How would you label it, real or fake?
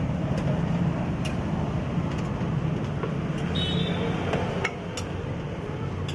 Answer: real